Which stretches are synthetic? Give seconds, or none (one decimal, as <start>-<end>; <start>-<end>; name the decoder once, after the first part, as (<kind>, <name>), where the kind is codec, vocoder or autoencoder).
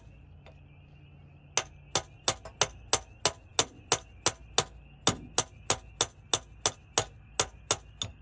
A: none